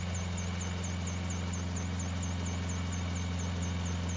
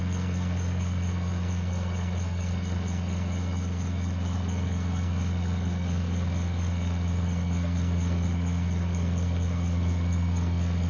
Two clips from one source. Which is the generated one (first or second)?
second